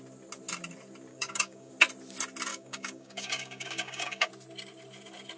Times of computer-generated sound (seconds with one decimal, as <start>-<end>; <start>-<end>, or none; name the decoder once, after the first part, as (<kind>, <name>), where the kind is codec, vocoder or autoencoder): 1.1-1.7 (codec, DAC); 2.5-4.3